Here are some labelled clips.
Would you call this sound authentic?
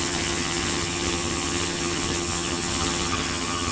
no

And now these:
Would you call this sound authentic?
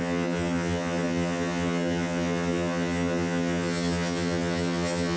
no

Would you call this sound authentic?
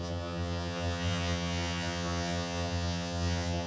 no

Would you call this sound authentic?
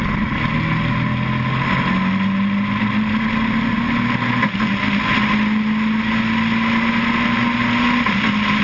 yes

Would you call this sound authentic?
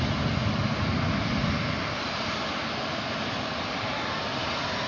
yes